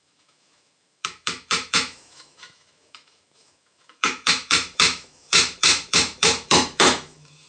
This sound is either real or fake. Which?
fake